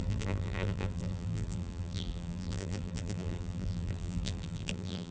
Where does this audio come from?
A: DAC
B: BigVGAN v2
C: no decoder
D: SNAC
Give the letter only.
B